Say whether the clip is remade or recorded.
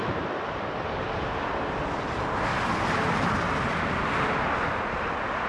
recorded